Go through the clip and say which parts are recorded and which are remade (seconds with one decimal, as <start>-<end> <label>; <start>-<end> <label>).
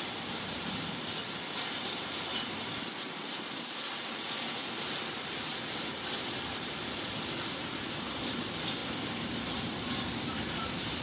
0.0-6.5 recorded; 6.5-7.1 remade; 7.1-8.8 recorded; 8.8-11.0 remade